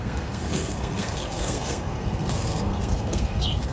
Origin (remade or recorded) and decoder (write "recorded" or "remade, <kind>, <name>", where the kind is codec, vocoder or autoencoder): remade, codec, SNAC